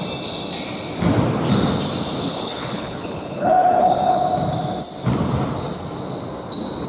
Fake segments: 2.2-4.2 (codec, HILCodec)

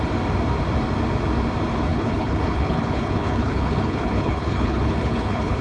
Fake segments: 1.9-5.6 (codec, HILCodec)